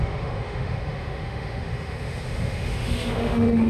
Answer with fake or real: fake